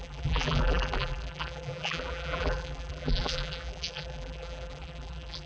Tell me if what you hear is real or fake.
fake